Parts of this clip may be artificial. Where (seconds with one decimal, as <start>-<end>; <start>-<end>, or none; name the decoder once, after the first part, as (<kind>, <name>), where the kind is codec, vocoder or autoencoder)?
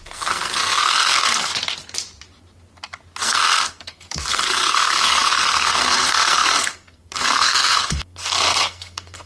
0.0-1.5 (codec, SNAC); 3.2-9.3